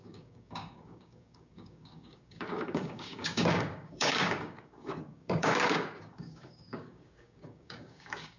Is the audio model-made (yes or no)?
yes